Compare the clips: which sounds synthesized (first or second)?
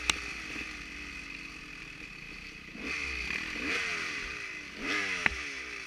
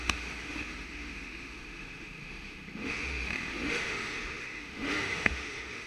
second